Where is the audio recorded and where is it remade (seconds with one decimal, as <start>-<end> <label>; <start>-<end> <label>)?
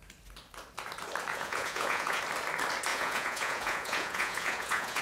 0.0-1.3 recorded; 1.3-2.2 remade; 2.2-2.9 recorded; 2.9-5.0 remade